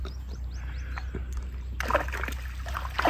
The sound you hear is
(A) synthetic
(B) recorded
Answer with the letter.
B